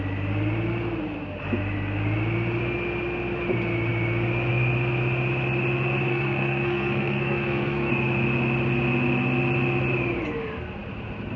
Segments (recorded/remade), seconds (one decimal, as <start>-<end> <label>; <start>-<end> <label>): 0.0-6.1 recorded; 6.1-7.9 remade; 7.9-11.4 recorded